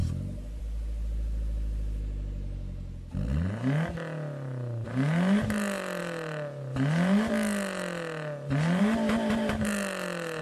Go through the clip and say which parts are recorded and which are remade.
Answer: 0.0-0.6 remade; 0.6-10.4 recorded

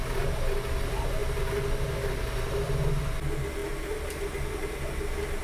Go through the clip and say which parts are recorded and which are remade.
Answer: 0.0-5.4 recorded

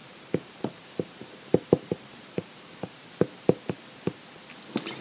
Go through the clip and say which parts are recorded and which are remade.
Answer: 0.0-3.0 remade; 3.0-5.0 recorded

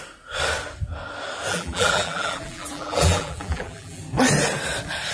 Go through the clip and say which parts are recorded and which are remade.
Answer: 0.0-1.5 recorded; 1.5-4.0 remade; 4.0-5.1 recorded

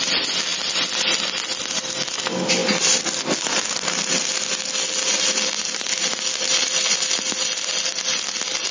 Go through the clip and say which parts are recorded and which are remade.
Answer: 0.0-8.7 recorded

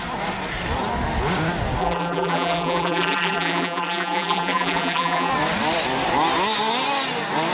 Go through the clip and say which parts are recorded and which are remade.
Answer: 0.0-1.8 recorded; 1.8-5.3 remade; 5.3-7.5 recorded

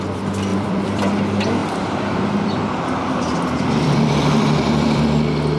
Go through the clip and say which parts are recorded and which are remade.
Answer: 0.0-0.5 recorded; 0.5-1.2 remade; 1.2-1.6 recorded; 1.6-5.0 remade; 5.0-5.6 recorded